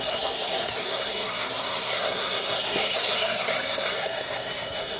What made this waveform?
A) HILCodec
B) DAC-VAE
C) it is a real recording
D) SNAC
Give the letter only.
D